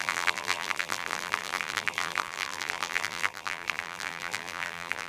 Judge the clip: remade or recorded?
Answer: remade